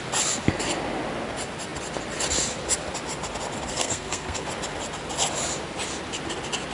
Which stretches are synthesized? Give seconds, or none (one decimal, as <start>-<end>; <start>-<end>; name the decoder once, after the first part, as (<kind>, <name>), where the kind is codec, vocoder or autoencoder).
3.7-4.5 (codec, SNAC)